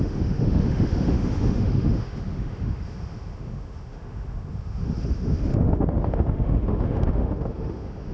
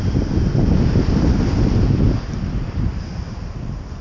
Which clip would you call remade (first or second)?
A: first